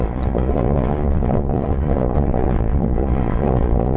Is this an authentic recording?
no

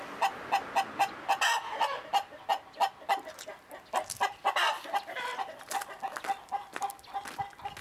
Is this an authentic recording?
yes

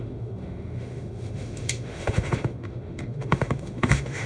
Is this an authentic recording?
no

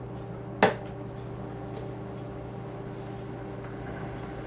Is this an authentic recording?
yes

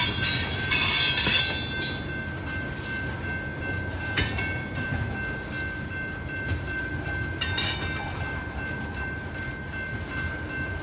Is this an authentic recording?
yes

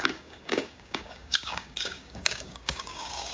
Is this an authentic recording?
no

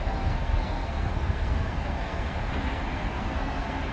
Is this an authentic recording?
no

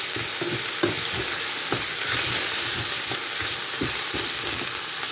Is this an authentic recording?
yes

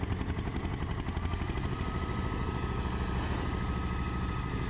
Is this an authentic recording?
yes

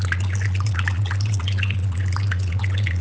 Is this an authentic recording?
no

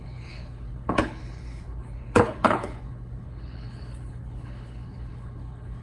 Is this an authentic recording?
no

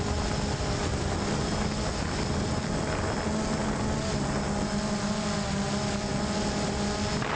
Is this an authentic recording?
yes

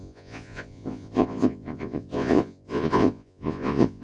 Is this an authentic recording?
no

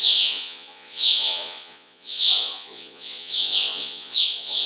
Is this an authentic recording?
no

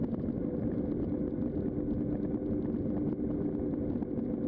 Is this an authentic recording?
yes